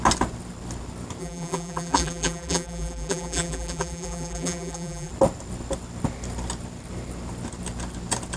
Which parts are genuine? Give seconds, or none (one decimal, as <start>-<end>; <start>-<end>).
0.0-1.2; 5.1-8.4